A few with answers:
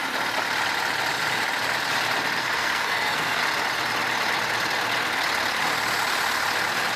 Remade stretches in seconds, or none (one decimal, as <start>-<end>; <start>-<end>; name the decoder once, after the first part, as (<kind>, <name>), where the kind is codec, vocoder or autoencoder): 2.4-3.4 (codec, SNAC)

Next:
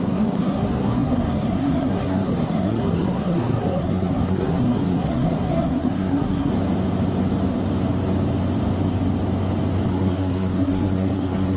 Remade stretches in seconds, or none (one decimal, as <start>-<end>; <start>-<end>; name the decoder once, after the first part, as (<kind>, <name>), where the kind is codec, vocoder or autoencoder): 0.0-6.5 (codec, SNAC); 9.9-11.6

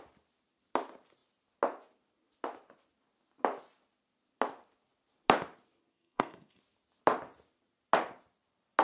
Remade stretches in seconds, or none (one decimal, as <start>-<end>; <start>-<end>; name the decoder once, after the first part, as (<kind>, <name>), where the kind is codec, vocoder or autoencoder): 5.9-6.6 (codec, SNAC)

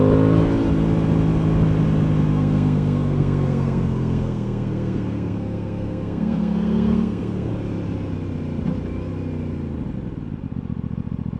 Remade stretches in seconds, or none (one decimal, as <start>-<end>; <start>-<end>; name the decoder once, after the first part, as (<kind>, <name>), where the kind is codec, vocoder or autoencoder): 2.3-7.5 (codec, SNAC)

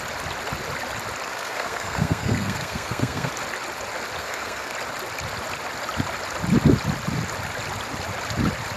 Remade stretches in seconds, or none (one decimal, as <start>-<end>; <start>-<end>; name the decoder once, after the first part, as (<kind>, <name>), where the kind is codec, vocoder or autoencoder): 1.3-3.3 (codec, SNAC); 4.2-4.7

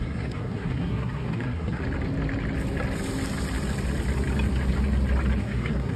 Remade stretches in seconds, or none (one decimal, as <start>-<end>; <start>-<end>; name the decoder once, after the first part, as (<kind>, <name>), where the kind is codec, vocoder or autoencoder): 0.0-1.8 (codec, SNAC); 5.4-6.0